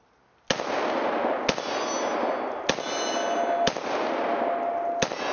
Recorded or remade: recorded